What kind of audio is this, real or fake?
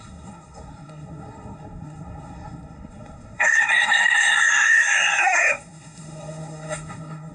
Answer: fake